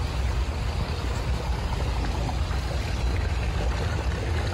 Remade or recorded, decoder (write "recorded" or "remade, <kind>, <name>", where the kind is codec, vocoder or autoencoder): recorded